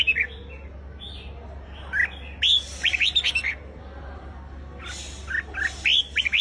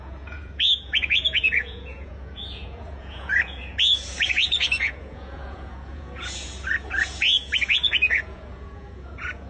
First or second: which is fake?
second